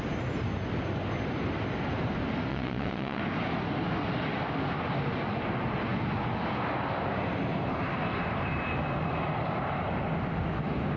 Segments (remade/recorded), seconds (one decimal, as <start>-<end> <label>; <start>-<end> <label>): 0.0-2.5 recorded; 2.5-3.2 remade; 3.2-11.0 recorded